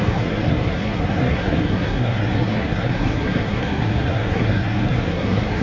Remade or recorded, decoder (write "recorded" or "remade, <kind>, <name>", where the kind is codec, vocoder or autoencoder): remade, codec, SNAC